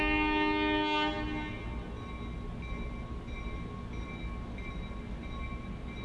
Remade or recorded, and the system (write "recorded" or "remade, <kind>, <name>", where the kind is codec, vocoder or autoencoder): recorded